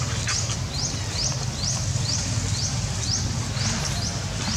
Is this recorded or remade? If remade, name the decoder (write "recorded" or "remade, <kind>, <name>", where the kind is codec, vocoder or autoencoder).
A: recorded